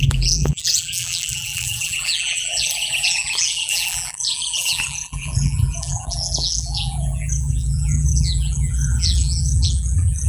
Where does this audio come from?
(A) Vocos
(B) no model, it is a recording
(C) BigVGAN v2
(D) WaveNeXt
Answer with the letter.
C